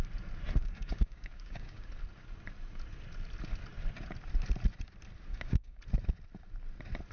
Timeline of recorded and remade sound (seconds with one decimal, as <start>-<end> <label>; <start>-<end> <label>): 0.0-0.6 recorded; 0.6-1.9 remade; 1.9-5.3 recorded; 5.3-5.8 remade; 5.8-7.1 recorded